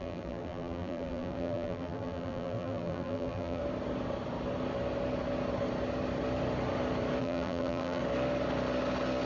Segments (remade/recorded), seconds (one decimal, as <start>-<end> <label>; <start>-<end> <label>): 0.0-3.6 remade; 3.6-7.2 recorded; 7.2-8.0 remade; 8.0-9.3 recorded